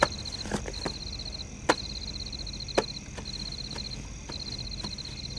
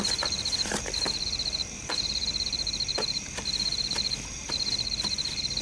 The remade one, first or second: second